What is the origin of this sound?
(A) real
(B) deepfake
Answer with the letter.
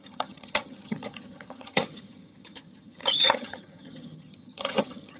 B